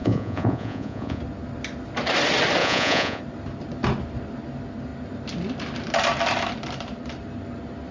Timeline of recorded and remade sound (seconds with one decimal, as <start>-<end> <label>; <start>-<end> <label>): 0.0-1.2 remade; 1.2-2.6 recorded; 2.6-3.2 remade; 3.2-7.9 recorded